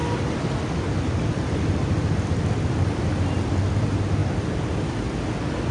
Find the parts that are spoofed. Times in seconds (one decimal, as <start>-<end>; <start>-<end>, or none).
4.2-4.8